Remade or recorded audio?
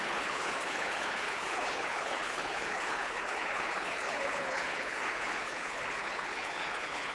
remade